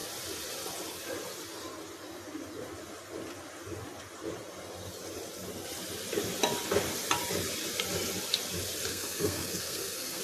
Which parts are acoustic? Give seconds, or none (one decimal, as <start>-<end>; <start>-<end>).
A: 0.0-8.9